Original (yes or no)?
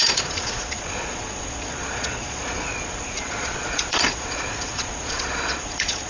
no